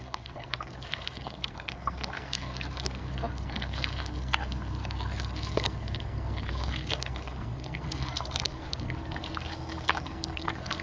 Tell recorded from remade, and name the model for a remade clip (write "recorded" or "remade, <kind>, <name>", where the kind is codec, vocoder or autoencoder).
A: remade, codec, SNAC